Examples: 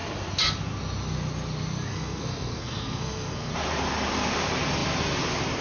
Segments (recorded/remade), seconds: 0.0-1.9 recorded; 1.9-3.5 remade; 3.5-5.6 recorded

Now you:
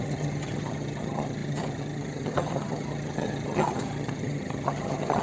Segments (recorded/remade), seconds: 0.0-5.2 remade

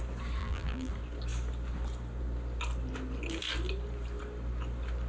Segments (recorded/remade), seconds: 0.0-0.4 recorded; 0.4-0.9 remade; 0.9-5.1 recorded

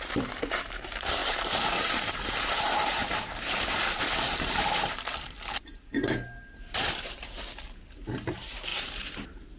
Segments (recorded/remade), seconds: 0.0-9.6 remade

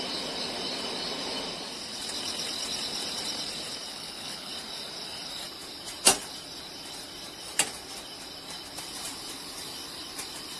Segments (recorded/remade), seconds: 0.0-3.9 recorded; 3.9-4.5 remade; 4.5-10.6 recorded

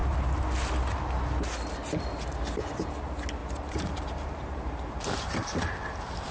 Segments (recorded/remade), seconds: 0.0-3.4 recorded; 3.4-6.3 remade

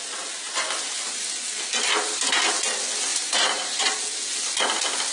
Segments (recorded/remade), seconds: 0.0-3.1 recorded; 3.1-4.0 remade; 4.0-5.1 recorded